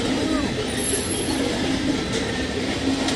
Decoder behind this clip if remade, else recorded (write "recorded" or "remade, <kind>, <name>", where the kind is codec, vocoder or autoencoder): recorded